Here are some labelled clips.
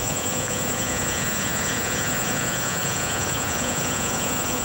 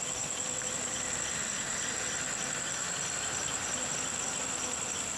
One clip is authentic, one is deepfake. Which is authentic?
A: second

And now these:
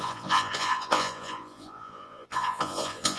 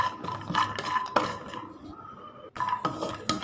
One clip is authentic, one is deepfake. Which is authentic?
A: second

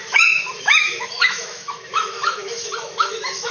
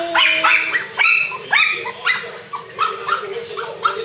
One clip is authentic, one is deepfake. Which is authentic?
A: second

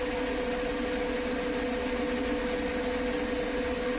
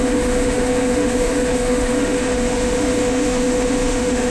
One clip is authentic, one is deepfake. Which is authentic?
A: first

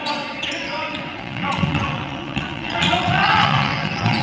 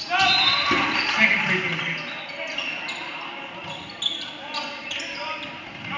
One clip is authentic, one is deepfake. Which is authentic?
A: second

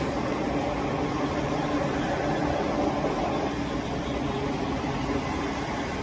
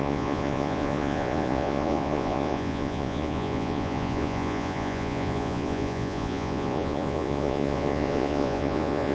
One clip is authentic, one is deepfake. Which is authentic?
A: first